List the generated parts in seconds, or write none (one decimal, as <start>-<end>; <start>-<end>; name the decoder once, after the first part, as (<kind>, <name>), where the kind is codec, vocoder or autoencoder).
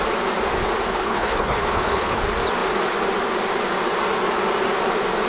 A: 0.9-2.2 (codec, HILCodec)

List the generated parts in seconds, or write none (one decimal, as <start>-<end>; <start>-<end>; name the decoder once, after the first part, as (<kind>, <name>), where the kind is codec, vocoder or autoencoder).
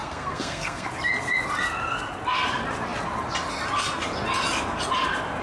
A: 0.0-0.9 (codec, SNAC)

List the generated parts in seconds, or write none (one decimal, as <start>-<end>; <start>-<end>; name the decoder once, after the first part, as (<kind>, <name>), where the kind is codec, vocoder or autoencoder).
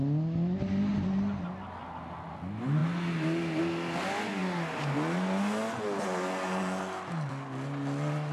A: none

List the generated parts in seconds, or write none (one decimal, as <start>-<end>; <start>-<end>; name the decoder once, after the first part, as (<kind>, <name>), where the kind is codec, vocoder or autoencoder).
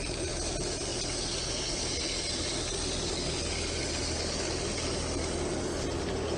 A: none